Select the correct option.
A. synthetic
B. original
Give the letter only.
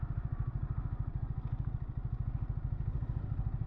B